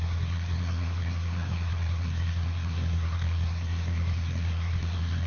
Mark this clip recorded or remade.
remade